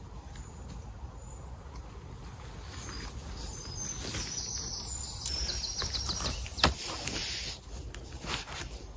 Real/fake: real